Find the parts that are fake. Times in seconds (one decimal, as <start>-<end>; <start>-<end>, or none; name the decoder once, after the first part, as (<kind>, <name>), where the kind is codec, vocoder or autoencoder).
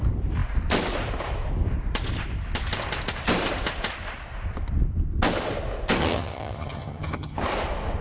6.0-7.4 (vocoder, HiFi-GAN)